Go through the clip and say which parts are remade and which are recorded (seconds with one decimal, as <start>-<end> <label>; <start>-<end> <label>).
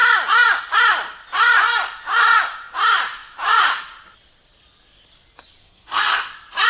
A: 0.0-5.6 recorded; 5.6-6.3 remade; 6.3-6.7 recorded